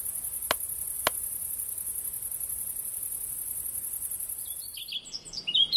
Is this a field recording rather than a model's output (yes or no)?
yes